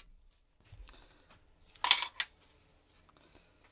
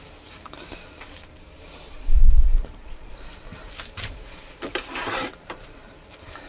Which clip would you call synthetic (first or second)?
second